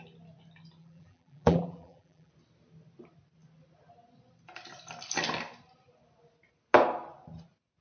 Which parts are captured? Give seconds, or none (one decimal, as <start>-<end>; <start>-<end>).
0.0-0.8; 2.3-7.8